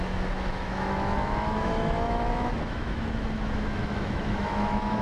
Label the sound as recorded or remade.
remade